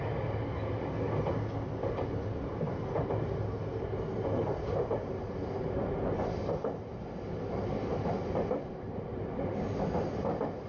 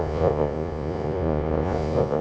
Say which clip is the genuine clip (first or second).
first